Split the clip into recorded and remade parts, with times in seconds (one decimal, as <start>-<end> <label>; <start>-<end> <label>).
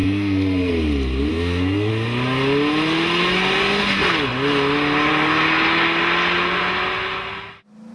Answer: 0.0-0.7 remade; 0.7-1.3 recorded; 1.3-1.9 remade; 1.9-7.9 recorded